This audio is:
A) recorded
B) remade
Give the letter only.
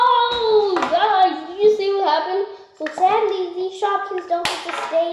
A